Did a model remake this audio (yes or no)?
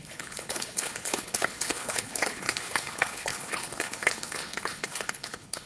yes